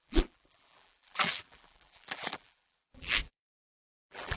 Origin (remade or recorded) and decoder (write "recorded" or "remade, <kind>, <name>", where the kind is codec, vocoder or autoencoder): remade, vocoder, BigVGAN v2